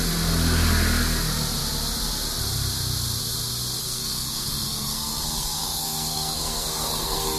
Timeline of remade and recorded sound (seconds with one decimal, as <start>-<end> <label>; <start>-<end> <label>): 0.0-3.8 recorded; 3.8-7.4 remade